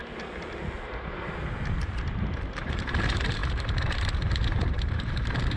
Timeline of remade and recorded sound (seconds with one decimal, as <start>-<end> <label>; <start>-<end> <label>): 0.0-2.5 recorded; 2.5-5.6 remade